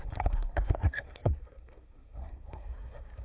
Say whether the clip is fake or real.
fake